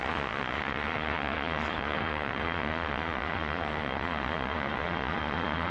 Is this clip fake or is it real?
fake